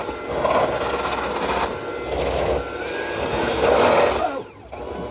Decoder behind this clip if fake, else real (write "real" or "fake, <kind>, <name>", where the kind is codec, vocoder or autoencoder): real